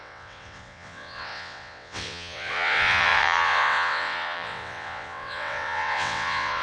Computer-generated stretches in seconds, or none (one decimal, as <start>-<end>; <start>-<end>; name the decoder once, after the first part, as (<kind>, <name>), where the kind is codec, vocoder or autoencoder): 0.0-6.6 (vocoder, WaveNeXt)